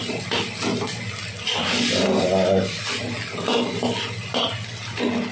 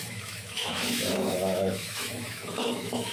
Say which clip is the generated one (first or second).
second